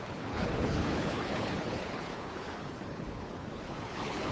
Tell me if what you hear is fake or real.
fake